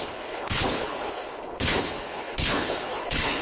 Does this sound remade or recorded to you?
remade